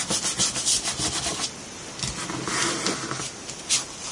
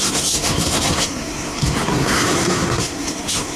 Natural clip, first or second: first